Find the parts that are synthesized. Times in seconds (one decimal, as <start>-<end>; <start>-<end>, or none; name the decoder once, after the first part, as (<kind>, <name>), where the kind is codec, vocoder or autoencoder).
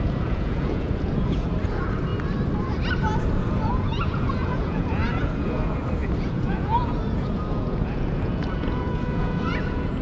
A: 0.0-2.1 (vocoder, Vocos); 3.2-10.0